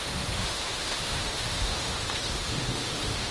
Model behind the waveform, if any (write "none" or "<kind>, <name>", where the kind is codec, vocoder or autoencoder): autoencoder, DAC-VAE